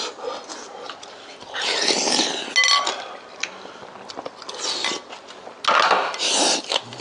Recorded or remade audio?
recorded